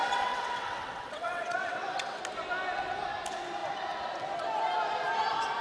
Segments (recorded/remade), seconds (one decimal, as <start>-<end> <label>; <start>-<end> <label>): 0.0-2.2 remade; 2.2-5.6 recorded